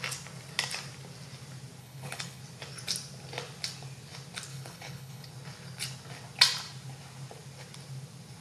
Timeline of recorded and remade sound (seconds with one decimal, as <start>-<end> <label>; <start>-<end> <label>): 0.0-1.8 recorded; 1.8-2.4 remade; 2.4-4.5 recorded; 4.5-5.3 remade; 5.3-8.4 recorded